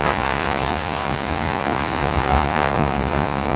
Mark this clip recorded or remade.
remade